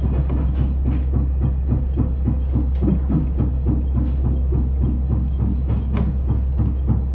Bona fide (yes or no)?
yes